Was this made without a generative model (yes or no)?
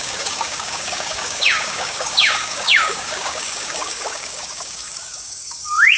no